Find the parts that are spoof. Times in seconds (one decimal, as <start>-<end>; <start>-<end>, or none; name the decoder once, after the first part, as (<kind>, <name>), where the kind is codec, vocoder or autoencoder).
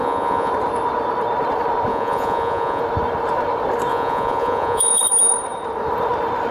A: 0.0-0.5 (vocoder, Vocos); 1.9-2.8; 3.9-5.0